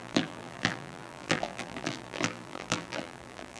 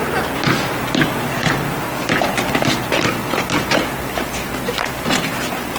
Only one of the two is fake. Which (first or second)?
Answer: first